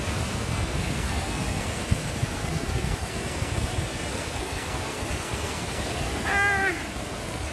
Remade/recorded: remade